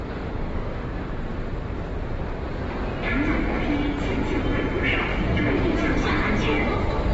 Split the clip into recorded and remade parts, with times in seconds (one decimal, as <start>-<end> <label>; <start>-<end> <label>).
0.0-7.1 recorded